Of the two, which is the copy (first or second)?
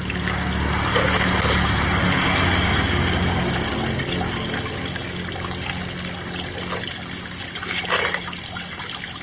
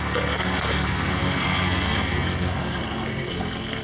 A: second